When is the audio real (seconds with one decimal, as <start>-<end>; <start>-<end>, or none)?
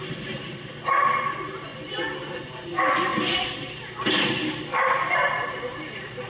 0.0-6.3